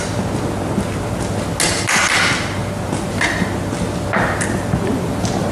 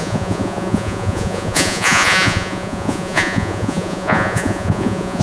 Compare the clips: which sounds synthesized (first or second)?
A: second